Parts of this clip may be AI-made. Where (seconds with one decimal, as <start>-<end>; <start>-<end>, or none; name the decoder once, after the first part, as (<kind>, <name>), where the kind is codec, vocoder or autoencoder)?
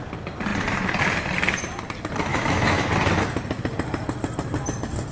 2.3-2.9 (autoencoder, DAC-VAE)